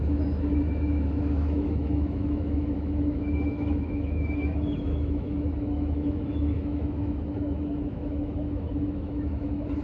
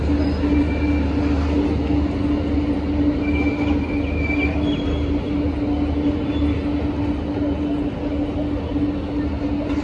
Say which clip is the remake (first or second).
first